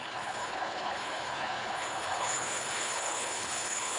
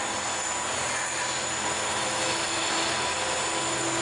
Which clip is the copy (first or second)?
first